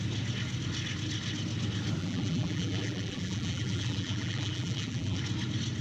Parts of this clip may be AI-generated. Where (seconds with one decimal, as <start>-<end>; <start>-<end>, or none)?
2.0-5.2